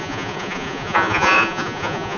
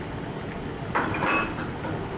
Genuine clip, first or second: second